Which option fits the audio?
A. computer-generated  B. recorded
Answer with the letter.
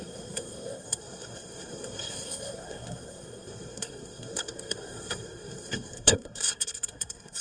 A